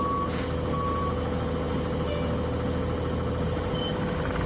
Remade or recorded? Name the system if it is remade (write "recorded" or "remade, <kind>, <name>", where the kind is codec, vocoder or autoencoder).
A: recorded